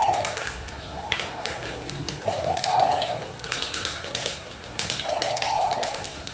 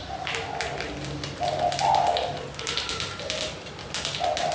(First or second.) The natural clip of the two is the second